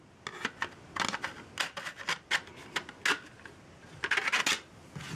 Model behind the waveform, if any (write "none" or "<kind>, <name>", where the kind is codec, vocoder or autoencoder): none